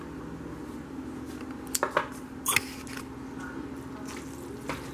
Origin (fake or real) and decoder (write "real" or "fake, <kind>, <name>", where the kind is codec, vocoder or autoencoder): real